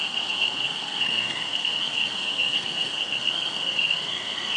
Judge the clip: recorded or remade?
remade